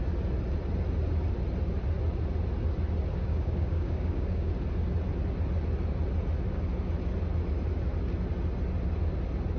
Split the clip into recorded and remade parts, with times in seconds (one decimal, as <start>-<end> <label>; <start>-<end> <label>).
0.0-3.3 recorded; 3.3-4.5 remade; 4.5-9.6 recorded